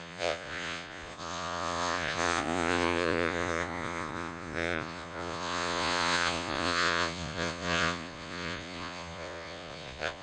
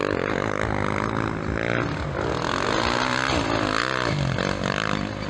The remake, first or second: first